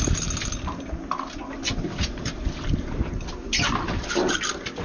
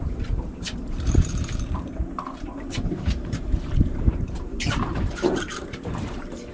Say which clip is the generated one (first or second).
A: second